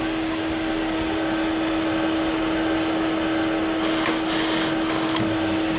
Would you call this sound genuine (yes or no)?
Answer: yes